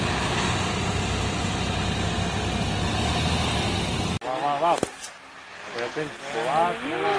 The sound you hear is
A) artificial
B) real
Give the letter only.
B